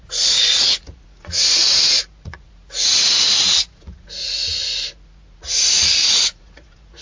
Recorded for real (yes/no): no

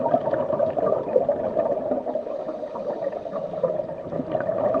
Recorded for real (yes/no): yes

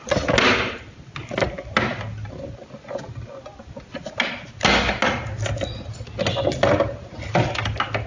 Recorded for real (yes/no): yes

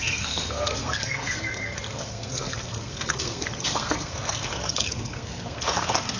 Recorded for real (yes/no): no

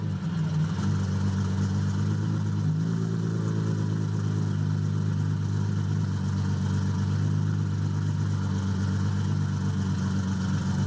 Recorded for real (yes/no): yes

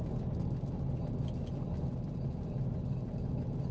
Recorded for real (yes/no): yes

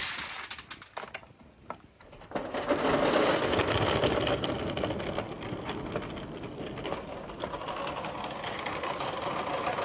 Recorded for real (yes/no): yes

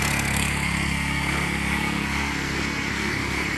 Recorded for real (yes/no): no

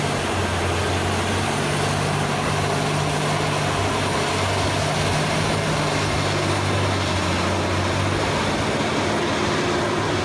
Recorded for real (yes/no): yes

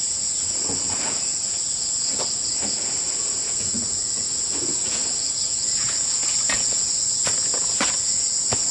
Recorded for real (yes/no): no